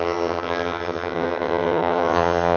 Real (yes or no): no